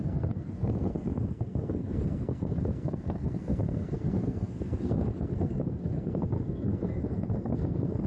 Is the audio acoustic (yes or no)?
no